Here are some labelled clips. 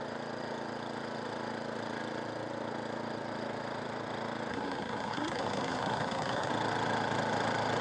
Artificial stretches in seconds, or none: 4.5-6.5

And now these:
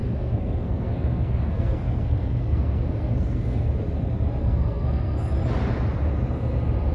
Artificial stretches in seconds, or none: 0.0-3.7; 4.4-5.3

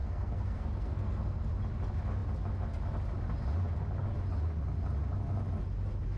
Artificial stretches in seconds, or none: 0.0-1.5

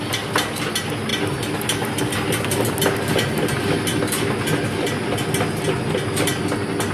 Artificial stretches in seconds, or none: none